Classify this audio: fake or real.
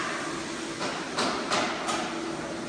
real